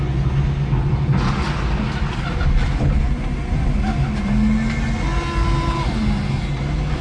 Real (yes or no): yes